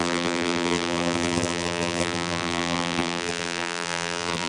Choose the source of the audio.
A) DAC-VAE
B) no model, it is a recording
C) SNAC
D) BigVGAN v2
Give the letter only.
D